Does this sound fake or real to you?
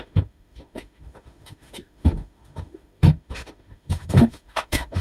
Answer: fake